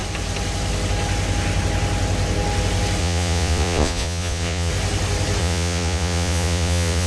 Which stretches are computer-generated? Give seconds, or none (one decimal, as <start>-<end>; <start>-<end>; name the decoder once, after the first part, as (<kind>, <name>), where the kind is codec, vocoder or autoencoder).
3.0-4.7 (vocoder, Vocos); 5.4-7.1